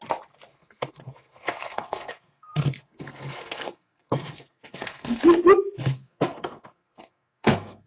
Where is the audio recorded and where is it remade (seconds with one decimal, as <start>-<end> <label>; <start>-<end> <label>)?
0.0-0.5 recorded; 0.5-5.2 remade; 5.2-5.8 recorded; 5.8-7.9 remade